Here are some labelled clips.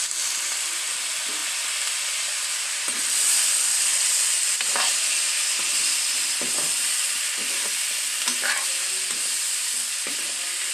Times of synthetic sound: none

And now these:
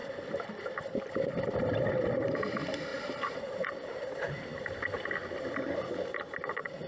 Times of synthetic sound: 2.9-4.1 (vocoder, BigVGAN v2)

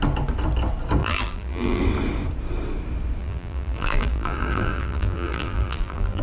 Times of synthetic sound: 1.0-1.8 (vocoder, BigVGAN v2); 3.2-6.2